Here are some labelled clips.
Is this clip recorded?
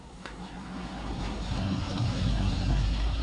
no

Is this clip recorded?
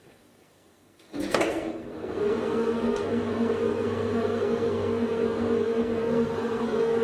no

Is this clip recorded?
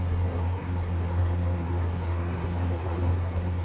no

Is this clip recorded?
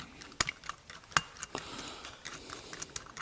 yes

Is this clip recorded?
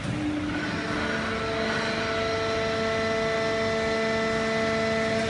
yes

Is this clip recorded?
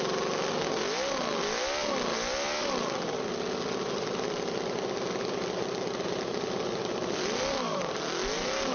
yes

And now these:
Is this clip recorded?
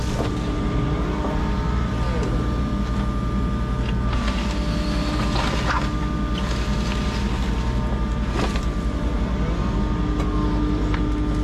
yes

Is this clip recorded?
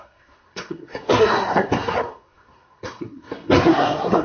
no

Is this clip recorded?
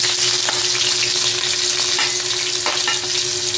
yes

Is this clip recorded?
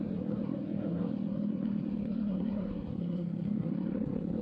no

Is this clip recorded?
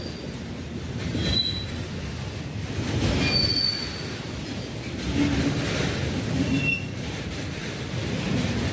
yes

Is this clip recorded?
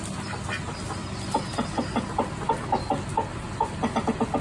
yes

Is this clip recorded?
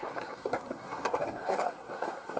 no